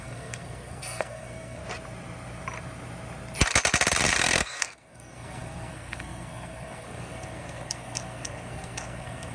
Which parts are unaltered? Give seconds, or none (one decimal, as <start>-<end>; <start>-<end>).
1.6-4.2